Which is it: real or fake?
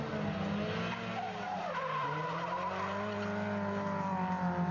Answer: real